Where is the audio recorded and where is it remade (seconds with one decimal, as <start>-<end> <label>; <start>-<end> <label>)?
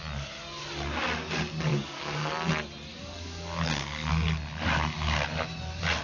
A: 0.0-1.7 recorded; 1.7-2.3 remade; 2.3-2.9 recorded; 2.9-4.1 remade; 4.1-6.0 recorded